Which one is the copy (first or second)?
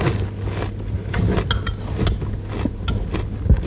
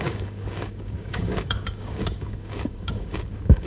second